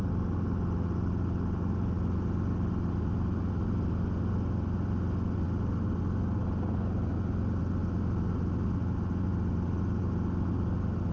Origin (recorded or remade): recorded